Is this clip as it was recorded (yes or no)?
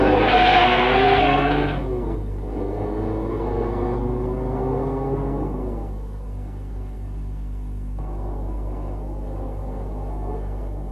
no